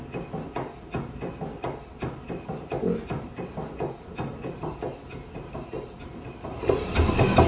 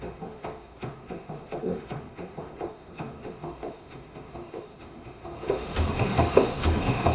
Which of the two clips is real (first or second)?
first